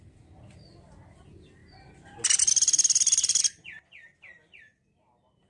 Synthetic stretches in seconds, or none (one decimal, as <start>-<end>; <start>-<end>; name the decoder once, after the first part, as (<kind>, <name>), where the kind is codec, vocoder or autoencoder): none